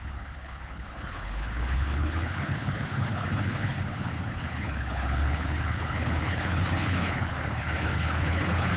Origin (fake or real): fake